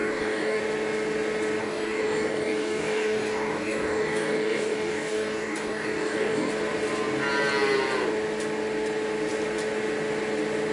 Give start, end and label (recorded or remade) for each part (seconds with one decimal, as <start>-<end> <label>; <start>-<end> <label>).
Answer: 0.0-0.6 remade; 0.6-1.6 recorded; 1.6-6.5 remade; 6.5-10.7 recorded

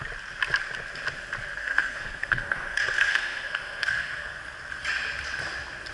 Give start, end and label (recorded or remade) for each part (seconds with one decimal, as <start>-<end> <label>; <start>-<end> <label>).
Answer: 0.0-1.6 recorded; 1.6-4.4 remade; 4.4-5.9 recorded

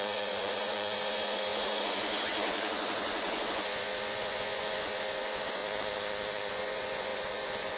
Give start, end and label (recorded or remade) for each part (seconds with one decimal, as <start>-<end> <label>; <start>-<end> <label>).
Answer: 0.0-5.6 remade; 5.6-6.5 recorded; 6.5-7.8 remade

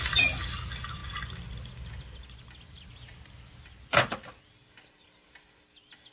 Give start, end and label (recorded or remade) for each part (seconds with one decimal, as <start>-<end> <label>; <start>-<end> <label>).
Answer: 0.0-6.1 recorded